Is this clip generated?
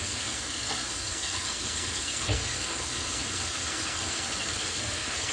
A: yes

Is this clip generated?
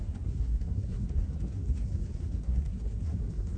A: yes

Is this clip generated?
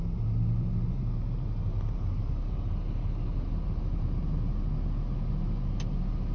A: no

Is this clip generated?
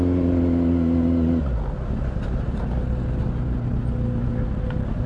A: no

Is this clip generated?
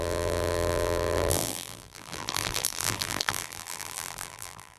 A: yes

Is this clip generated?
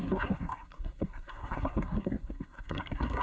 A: yes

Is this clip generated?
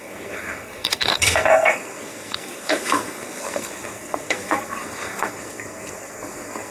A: yes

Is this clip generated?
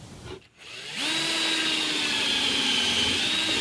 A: no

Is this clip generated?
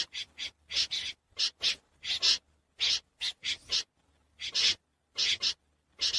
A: no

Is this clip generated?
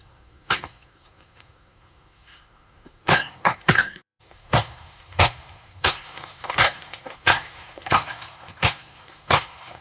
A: yes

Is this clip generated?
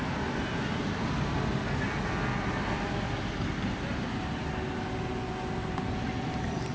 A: no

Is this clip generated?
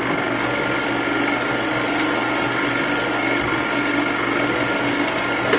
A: no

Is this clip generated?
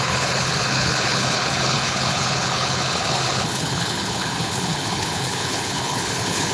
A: yes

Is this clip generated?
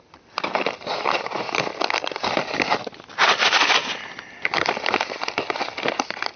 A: no